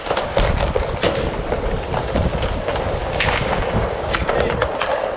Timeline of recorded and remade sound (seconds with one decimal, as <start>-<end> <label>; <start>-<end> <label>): 0.0-3.0 recorded; 3.0-4.0 remade; 4.0-5.2 recorded